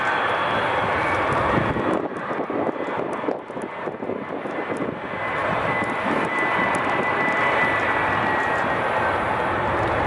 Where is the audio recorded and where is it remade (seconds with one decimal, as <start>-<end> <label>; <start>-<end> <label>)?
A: 0.0-10.1 recorded